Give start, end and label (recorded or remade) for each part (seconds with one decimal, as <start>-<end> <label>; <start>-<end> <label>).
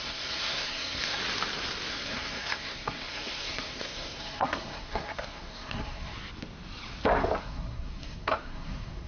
0.0-1.2 remade; 1.2-1.9 recorded; 1.9-6.1 remade; 6.1-7.4 recorded; 7.4-9.1 remade